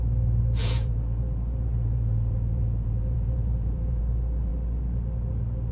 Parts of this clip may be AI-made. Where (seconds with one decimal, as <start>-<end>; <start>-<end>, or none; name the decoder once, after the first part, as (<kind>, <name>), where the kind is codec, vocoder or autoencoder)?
0.6-4.0 (vocoder, Vocos)